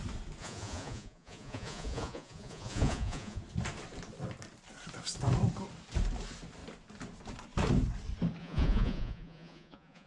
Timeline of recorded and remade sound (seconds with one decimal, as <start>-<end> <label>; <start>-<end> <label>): 0.0-0.4 recorded; 0.4-3.4 remade; 3.4-8.4 recorded; 8.4-10.1 remade